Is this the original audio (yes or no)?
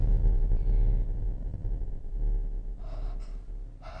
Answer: yes